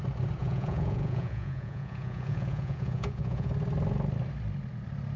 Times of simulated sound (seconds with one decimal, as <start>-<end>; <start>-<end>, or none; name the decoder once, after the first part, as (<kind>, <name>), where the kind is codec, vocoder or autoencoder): 0.4-3.5 (vocoder, Vocos)